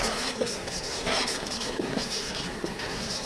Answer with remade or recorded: remade